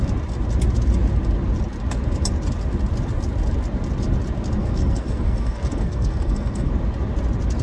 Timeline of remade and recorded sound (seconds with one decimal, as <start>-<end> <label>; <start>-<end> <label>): 0.0-4.6 recorded; 4.6-6.7 remade; 6.7-7.6 recorded